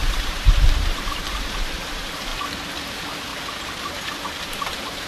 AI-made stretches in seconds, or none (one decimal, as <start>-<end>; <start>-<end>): 0.0-2.3; 2.9-3.3; 4.4-5.1